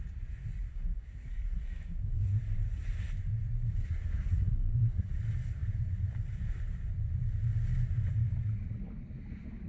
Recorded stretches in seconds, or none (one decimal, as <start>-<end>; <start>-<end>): 0.0-0.7; 2.4-3.8; 5.1-9.7